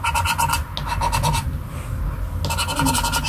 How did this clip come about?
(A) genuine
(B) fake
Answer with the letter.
A